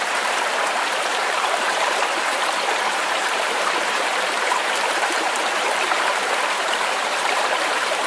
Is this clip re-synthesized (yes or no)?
yes